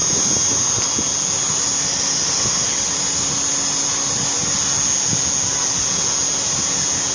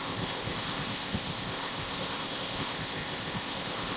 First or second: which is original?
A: first